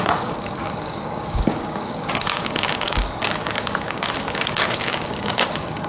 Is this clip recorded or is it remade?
remade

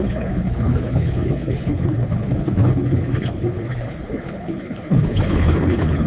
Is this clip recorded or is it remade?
remade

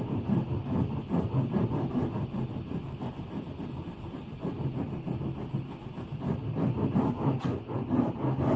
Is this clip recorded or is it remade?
recorded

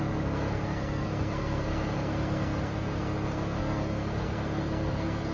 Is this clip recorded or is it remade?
remade